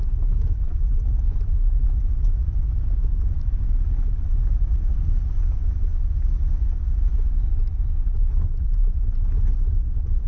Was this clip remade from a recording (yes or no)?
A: no